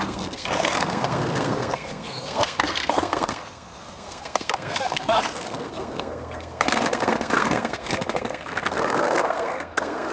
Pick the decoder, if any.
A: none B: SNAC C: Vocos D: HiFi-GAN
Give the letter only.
B